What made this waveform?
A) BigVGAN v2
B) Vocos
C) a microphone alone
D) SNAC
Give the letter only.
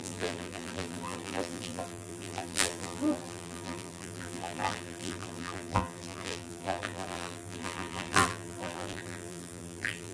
A